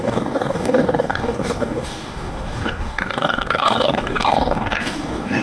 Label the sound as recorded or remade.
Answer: remade